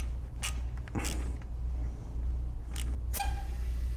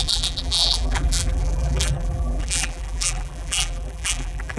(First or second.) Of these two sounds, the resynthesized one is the second